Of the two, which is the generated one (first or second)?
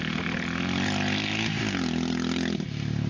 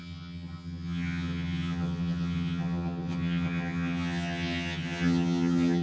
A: second